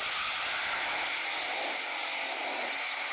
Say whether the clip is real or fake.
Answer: real